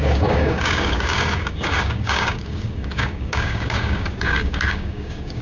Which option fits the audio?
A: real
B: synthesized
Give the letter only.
B